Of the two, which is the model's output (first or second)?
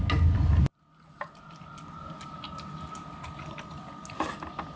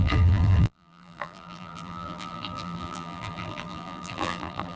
second